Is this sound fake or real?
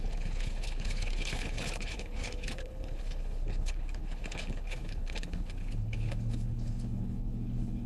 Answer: fake